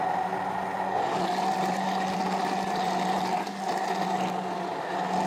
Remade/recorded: recorded